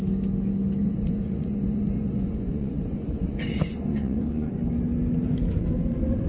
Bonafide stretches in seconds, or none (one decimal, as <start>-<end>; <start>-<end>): 0.0-0.8; 4.6-6.3